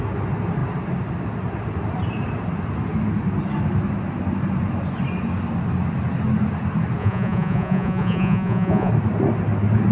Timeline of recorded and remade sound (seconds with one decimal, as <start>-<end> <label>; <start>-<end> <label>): 0.0-7.0 recorded; 7.0-8.9 remade; 8.9-9.9 recorded